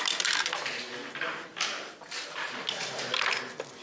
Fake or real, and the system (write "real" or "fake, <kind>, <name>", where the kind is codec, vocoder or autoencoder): real